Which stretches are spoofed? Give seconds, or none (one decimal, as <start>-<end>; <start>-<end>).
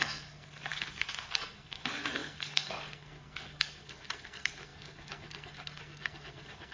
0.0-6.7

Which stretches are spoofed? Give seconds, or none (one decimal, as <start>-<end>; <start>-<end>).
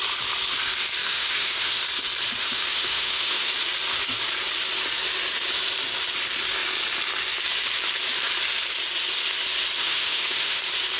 1.0-1.8; 2.4-3.5; 9.8-10.6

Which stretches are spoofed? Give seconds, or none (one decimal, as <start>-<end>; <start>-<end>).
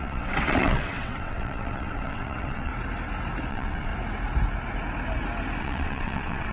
0.0-2.7; 3.5-3.9; 5.6-6.5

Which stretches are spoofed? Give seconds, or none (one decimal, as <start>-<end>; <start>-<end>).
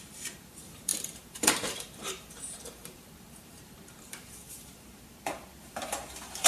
0.0-6.5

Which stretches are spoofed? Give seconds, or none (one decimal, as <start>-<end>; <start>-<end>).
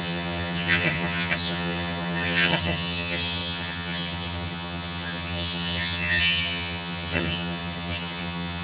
0.0-8.6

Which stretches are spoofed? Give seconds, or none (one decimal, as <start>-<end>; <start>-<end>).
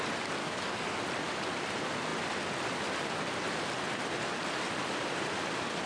0.4-1.0